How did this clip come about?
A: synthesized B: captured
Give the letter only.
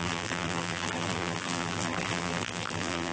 A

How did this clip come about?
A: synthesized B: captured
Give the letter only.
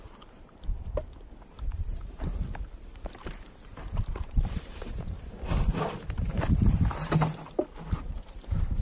A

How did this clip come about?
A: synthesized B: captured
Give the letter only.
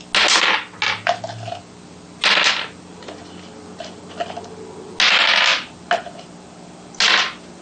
B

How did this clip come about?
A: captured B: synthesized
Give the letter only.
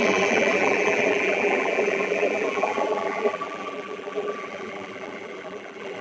B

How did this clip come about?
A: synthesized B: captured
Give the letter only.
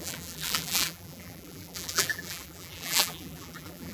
A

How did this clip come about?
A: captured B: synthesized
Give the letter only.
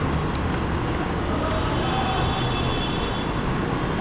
A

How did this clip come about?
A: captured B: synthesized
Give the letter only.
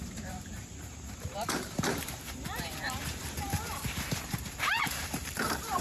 B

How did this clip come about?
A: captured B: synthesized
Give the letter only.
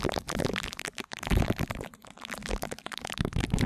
B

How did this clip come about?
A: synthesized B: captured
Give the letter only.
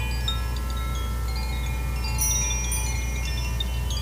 B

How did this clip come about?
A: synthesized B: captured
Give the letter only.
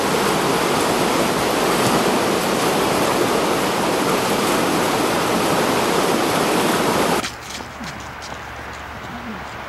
B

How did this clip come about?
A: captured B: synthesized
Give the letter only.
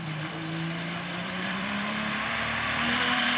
B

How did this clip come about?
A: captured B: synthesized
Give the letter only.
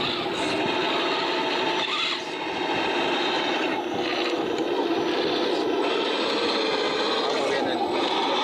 A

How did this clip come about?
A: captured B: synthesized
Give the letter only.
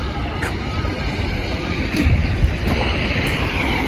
B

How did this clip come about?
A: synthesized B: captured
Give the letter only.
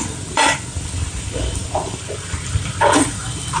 A